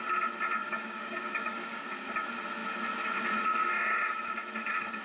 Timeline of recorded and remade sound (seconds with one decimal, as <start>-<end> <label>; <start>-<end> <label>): 0.0-0.6 recorded; 0.6-1.9 remade; 1.9-5.0 recorded

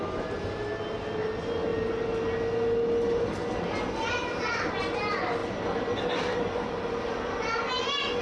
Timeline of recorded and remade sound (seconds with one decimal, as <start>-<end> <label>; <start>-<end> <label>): 0.0-8.2 recorded

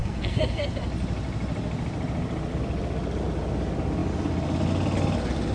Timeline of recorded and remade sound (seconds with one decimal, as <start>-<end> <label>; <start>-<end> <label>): 0.0-0.7 remade; 0.7-5.5 recorded

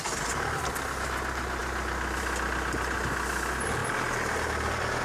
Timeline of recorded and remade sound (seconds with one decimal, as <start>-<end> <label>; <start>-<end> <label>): 0.0-3.8 recorded; 3.8-5.0 remade

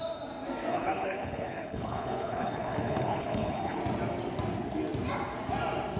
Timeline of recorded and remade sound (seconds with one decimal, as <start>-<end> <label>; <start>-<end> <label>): 0.0-0.7 recorded; 0.7-3.8 remade; 3.8-6.0 recorded

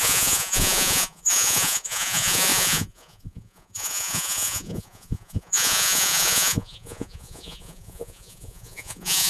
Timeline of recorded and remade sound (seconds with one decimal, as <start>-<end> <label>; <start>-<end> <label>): 0.0-9.3 remade

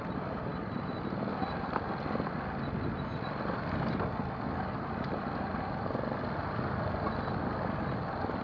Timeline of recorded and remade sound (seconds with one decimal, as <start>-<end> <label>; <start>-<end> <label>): 0.0-8.4 recorded

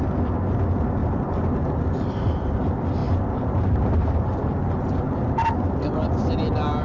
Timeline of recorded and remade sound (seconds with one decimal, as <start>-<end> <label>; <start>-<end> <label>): 0.0-1.0 recorded; 1.0-2.6 remade; 2.6-3.0 recorded; 3.0-5.4 remade; 5.4-6.8 recorded